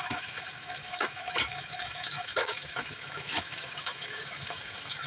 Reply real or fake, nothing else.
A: fake